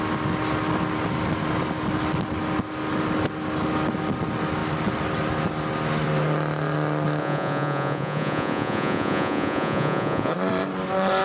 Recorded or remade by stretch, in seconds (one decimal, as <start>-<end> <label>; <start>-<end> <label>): 0.0-7.2 recorded; 7.2-10.3 remade; 10.3-11.2 recorded